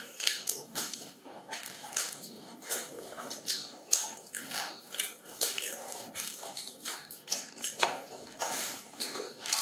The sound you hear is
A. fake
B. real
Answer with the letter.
A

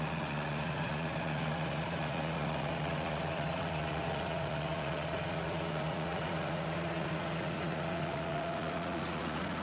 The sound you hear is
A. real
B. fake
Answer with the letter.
B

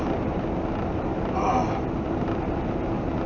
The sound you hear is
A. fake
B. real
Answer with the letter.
B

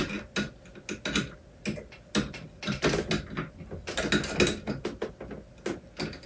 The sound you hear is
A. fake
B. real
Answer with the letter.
B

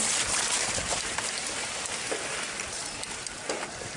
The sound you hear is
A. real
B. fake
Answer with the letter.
A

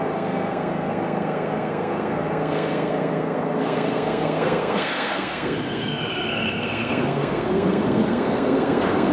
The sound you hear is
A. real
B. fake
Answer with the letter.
B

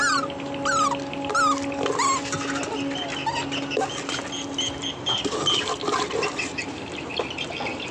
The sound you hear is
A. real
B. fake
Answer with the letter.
A